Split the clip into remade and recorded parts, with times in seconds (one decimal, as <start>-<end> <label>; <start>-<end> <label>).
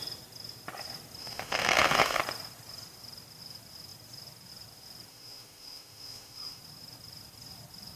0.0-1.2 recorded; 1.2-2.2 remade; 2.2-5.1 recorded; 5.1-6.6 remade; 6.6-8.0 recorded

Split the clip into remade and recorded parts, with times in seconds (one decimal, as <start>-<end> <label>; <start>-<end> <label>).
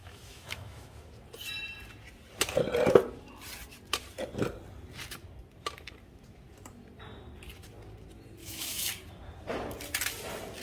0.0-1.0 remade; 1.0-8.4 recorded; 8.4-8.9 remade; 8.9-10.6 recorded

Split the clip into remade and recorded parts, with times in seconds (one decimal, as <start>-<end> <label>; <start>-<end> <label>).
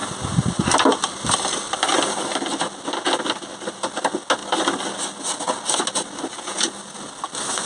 0.0-7.7 recorded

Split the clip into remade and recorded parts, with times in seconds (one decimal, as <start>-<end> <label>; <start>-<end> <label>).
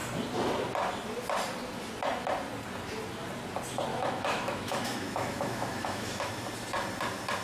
0.0-3.9 recorded; 3.9-6.3 remade; 6.3-7.4 recorded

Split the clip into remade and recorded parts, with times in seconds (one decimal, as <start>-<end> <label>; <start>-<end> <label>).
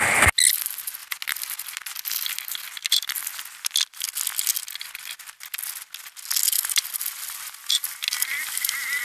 0.0-9.0 recorded